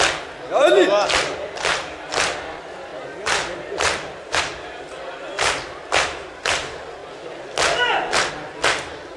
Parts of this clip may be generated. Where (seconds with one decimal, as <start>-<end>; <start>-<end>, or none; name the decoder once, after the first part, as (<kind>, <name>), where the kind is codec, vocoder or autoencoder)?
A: 0.0-7.0 (vocoder, BigVGAN v2); 8.3-9.2